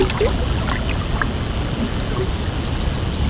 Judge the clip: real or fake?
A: real